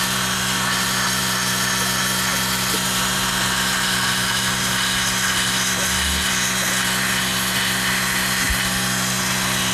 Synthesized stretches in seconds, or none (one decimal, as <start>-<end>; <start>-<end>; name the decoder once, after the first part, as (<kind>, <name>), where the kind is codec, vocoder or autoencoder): none